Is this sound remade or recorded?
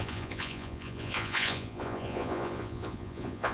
remade